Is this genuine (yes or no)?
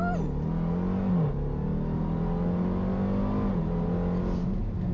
yes